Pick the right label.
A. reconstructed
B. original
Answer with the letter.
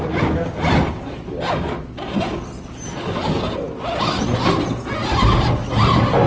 B